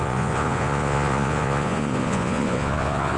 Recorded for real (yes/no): no